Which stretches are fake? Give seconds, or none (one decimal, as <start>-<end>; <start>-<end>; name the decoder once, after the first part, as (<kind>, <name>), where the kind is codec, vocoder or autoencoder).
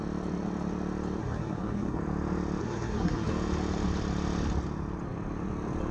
1.2-2.0 (codec, SNAC); 2.6-3.3